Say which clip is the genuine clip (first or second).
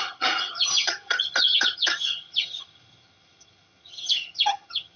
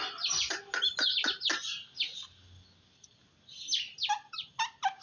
second